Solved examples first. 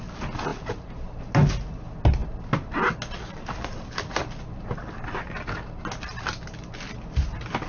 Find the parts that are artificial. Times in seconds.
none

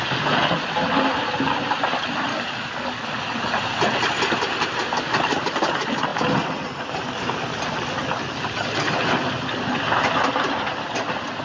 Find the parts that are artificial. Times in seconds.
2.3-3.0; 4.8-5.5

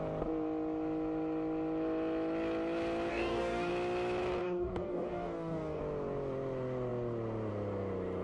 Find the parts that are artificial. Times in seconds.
3.1-3.7; 4.4-5.8

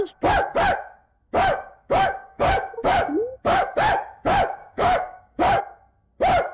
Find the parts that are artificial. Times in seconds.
1.5-3.9; 4.6-5.6

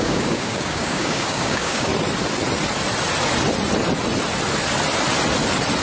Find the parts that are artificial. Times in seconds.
0.0-1.9